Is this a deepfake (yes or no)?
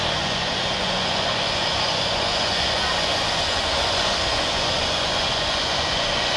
yes